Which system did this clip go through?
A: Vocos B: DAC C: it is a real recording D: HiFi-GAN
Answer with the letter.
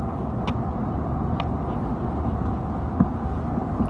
C